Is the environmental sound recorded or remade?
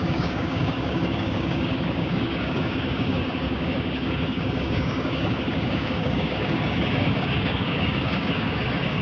remade